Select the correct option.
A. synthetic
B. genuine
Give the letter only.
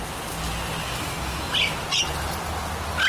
B